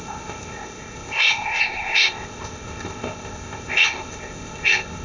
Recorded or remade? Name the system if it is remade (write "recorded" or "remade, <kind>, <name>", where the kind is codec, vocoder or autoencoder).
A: remade, codec, ZipCodec